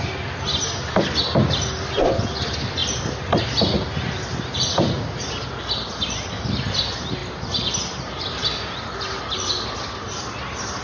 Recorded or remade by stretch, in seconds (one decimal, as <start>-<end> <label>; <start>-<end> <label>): 0.0-10.8 recorded